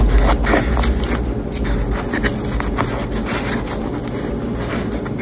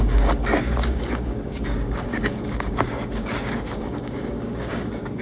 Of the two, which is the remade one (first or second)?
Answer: second